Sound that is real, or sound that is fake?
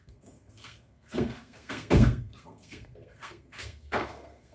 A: fake